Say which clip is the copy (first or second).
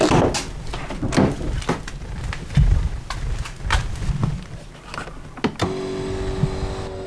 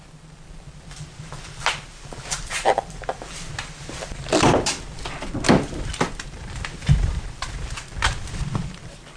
second